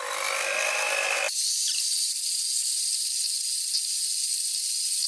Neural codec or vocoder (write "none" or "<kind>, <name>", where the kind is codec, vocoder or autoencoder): none